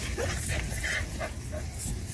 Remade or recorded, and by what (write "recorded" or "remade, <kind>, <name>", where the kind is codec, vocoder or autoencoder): recorded